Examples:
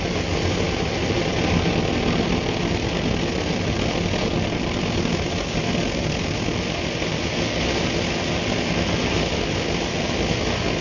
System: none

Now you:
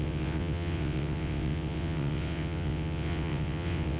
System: vocoder, WaveNeXt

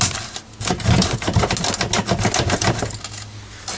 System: none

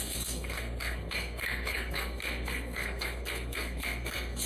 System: codec, SNAC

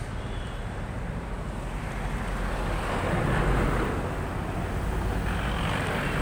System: none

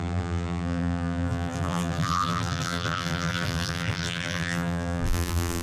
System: vocoder, BigVGAN v2